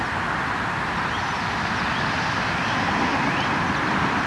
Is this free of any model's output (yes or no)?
yes